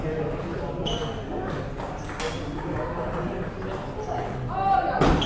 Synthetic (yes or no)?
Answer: no